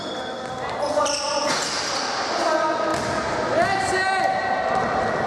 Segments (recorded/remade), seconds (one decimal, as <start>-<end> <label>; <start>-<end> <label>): 0.0-5.3 recorded